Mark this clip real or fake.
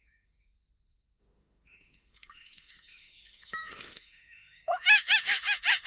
fake